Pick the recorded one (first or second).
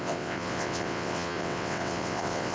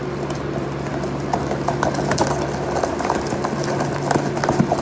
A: second